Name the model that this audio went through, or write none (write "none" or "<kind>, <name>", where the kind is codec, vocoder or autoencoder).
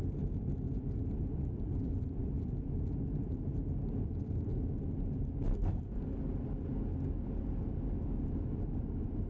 none